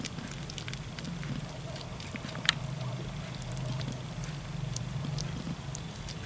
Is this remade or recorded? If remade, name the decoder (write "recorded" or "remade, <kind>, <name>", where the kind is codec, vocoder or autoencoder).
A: remade, vocoder, BigVGAN v2